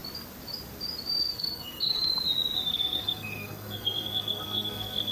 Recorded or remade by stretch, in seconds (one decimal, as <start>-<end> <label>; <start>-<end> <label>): 0.0-1.2 recorded; 1.2-2.1 remade; 2.1-2.7 recorded; 2.7-5.1 remade